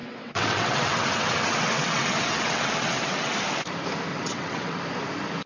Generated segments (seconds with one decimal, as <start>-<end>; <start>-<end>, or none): 0.0-3.3; 4.1-4.8